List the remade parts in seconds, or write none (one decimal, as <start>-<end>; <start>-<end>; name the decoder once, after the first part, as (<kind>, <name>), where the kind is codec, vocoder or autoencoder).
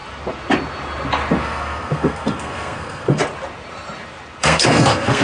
1.4-3.2 (codec, SNAC); 4.4-5.2